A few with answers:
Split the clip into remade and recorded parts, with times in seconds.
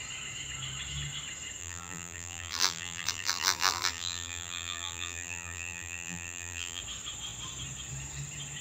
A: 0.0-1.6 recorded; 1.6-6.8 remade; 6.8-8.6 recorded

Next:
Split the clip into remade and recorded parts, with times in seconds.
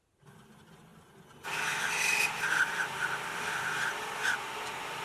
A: 0.0-5.0 recorded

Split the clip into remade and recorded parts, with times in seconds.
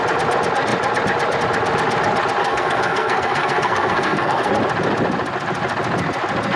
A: 0.0-2.4 recorded; 2.4-4.5 remade; 4.5-6.6 recorded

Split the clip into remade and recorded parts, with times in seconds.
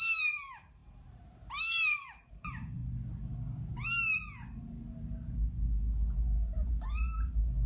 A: 0.0-2.8 remade; 2.8-6.4 recorded; 6.4-7.7 remade